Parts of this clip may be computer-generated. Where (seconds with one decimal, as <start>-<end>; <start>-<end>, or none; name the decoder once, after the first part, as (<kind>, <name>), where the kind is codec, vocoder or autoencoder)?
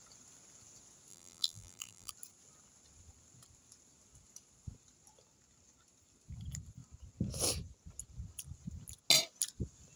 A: 1.1-2.1 (vocoder, BigVGAN v2)